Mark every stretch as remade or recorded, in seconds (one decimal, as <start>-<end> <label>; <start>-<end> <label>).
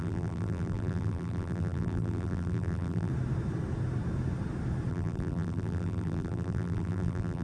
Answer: 0.0-3.1 remade; 3.1-4.9 recorded; 4.9-7.4 remade